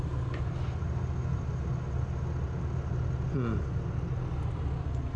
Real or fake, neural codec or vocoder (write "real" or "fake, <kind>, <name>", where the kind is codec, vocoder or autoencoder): real